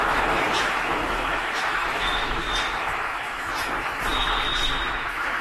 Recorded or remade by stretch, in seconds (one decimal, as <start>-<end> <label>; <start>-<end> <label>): 0.0-5.4 remade